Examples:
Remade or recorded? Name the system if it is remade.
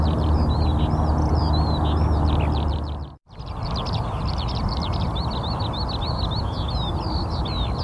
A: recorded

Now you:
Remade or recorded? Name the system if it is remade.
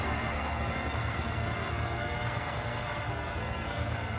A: remade, codec, SNAC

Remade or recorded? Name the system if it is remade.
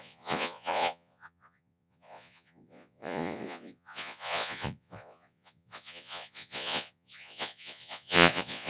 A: remade, vocoder, Vocos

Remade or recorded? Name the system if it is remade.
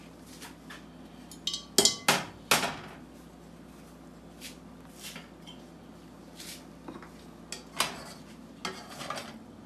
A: recorded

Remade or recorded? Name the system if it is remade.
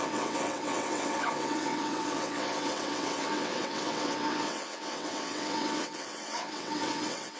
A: remade, vocoder, WaveNeXt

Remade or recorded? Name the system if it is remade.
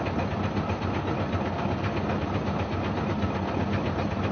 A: recorded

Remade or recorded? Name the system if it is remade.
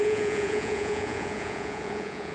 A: remade, vocoder, Vocos